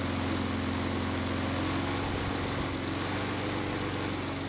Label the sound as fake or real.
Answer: real